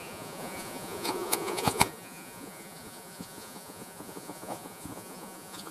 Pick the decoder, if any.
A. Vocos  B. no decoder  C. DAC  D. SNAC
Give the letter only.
A